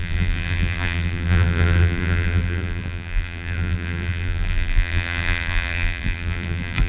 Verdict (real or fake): fake